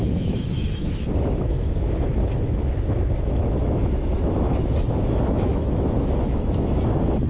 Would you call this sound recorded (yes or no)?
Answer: no